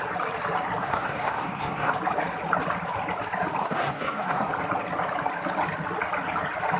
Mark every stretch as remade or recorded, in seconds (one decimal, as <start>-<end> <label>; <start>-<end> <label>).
0.0-0.8 recorded; 0.8-1.9 remade; 1.9-3.6 recorded; 3.6-4.5 remade; 4.5-6.8 recorded